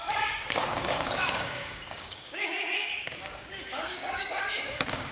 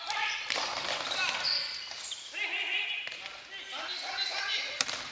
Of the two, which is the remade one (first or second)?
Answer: first